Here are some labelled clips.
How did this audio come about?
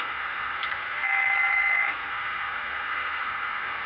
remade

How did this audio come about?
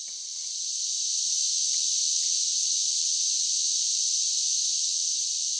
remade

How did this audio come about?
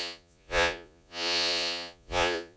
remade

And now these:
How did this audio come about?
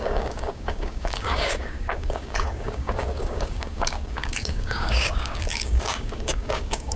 remade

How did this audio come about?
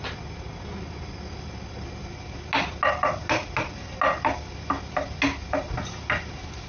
recorded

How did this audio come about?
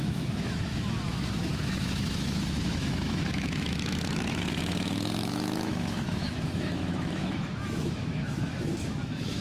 remade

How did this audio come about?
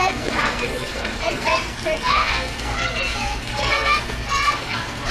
remade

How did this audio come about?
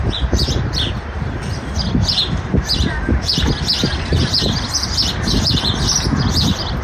remade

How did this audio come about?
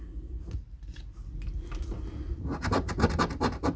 recorded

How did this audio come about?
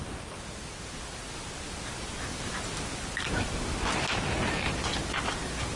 recorded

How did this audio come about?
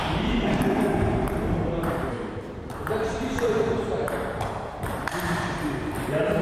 remade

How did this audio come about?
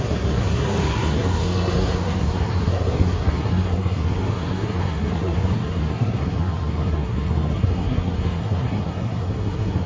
remade